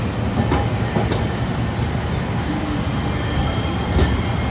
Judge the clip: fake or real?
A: real